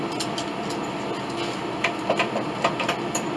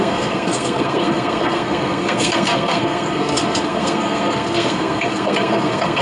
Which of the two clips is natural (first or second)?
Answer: first